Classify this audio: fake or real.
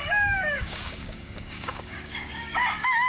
fake